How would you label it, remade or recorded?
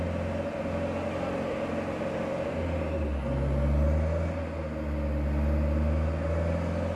recorded